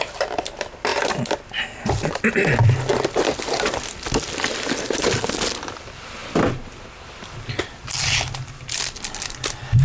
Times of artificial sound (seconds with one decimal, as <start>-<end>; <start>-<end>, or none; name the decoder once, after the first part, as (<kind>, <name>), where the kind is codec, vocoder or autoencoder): none